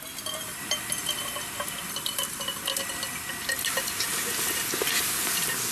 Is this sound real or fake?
real